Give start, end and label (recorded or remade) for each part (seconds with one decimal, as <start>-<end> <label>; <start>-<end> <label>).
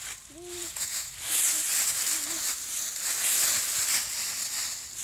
0.0-0.6 recorded; 0.6-1.1 remade; 1.1-5.0 recorded